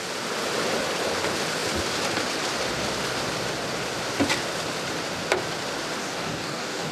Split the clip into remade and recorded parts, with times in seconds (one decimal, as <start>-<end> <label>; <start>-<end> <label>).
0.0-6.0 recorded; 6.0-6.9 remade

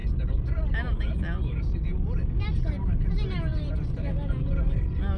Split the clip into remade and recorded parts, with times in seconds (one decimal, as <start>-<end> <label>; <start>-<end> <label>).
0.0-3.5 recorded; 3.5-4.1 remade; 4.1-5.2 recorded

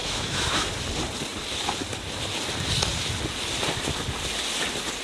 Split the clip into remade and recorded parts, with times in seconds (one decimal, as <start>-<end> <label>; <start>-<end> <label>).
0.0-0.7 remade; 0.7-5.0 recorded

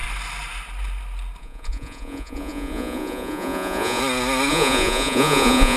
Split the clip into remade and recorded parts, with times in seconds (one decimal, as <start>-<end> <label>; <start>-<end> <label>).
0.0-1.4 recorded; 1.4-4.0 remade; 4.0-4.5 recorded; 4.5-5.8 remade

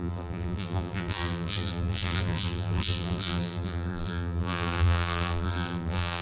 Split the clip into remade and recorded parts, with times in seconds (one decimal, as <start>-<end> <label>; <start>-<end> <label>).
0.0-6.2 remade